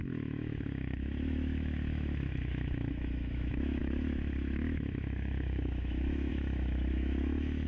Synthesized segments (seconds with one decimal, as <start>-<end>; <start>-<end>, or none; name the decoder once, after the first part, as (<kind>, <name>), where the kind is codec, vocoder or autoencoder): 0.0-7.7 (autoencoder, DAC-VAE)